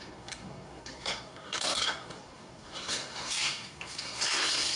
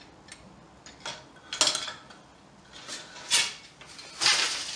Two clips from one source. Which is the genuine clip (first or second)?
second